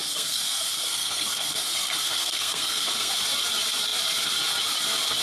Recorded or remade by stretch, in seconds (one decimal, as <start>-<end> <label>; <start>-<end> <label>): 0.0-3.1 remade; 3.1-5.2 recorded